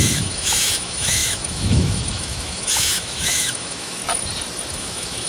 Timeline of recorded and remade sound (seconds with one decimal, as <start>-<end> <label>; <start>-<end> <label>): 0.0-4.0 remade; 4.0-4.7 recorded; 4.7-5.3 remade